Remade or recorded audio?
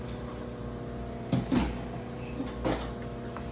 recorded